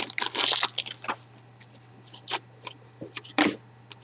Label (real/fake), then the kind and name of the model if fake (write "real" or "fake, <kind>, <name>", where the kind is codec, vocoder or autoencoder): real